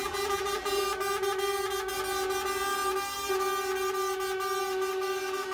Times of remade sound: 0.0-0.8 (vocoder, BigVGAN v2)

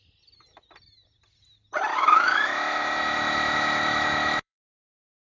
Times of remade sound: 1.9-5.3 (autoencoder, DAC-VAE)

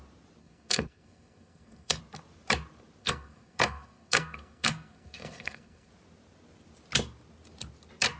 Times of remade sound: 0.4-2.0 (codec, SNAC); 3.0-5.9

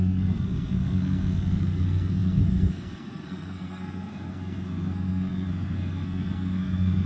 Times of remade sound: 0.0-7.1 (codec, SNAC)